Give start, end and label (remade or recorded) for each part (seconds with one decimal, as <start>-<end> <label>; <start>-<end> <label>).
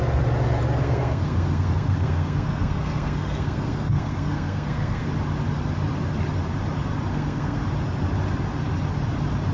0.0-0.8 recorded; 0.8-5.1 remade; 5.1-7.1 recorded; 7.1-7.6 remade; 7.6-9.5 recorded